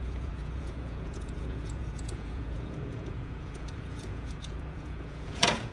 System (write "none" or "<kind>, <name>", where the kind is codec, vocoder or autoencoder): vocoder, Vocos